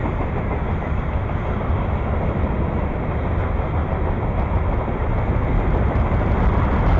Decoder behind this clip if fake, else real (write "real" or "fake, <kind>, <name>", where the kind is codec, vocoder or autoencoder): real